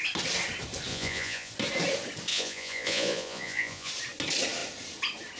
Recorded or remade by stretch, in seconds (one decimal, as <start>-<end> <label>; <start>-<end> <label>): 0.0-0.9 recorded; 0.9-1.5 remade; 1.5-2.3 recorded; 2.3-3.9 remade; 3.9-5.4 recorded